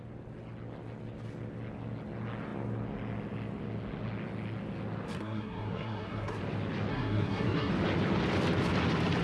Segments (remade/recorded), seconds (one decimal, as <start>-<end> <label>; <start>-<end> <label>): 0.0-5.1 recorded; 5.1-6.4 remade; 6.4-6.9 recorded; 6.9-7.7 remade; 7.7-9.2 recorded